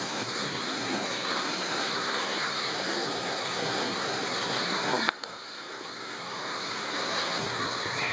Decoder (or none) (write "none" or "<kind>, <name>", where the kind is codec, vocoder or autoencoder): codec, SNAC